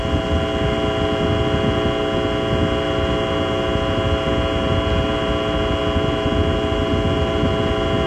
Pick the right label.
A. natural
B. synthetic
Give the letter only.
A